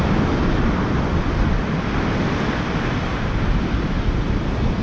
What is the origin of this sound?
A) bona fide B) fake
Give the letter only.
A